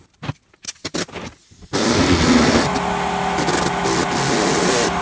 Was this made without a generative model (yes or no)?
yes